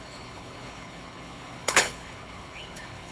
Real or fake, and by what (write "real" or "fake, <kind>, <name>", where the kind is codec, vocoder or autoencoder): fake, codec, HILCodec